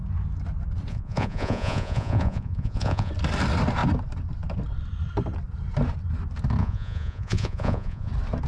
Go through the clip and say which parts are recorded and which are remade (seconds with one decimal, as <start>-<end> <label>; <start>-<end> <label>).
0.0-0.9 recorded; 0.9-3.1 remade; 3.1-6.6 recorded; 6.6-8.1 remade; 8.1-8.5 recorded